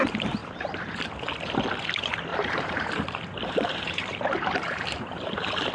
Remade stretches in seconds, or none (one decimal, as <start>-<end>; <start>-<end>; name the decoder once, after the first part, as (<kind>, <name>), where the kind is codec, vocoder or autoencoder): 0.4-1.0 (vocoder, BigVGAN v2); 2.3-5.7